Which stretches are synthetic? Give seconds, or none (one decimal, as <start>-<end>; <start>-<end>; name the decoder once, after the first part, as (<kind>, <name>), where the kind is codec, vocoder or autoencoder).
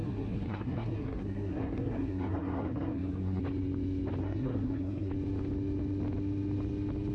0.0-3.4 (codec, SNAC); 4.2-5.1